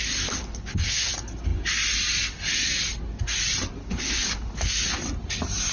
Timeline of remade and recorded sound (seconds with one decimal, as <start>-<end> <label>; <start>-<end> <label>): 0.0-0.4 recorded; 0.4-1.1 remade; 1.1-3.8 recorded; 3.8-4.7 remade; 4.7-5.7 recorded